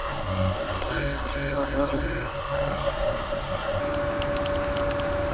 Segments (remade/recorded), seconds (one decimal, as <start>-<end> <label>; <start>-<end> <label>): 0.0-3.8 remade; 3.8-5.3 recorded